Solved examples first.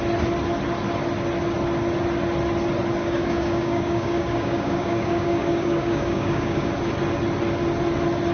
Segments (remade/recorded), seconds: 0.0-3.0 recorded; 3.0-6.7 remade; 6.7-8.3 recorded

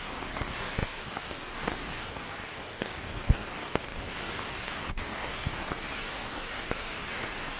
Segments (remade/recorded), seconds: 0.0-7.6 remade

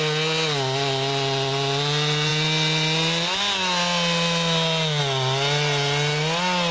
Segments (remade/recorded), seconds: 0.0-6.7 recorded

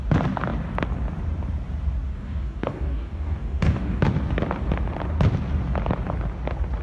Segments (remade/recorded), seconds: 0.0-2.1 recorded; 2.1-4.0 remade; 4.0-6.8 recorded

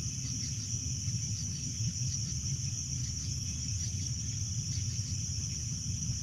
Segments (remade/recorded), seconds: 0.0-1.4 recorded; 1.4-1.9 remade; 1.9-3.0 recorded; 3.0-4.4 remade; 4.4-6.2 recorded

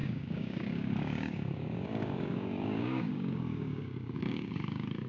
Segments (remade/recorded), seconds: 0.0-5.1 remade

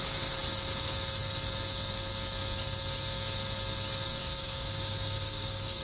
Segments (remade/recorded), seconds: 0.0-4.2 recorded; 4.2-5.8 remade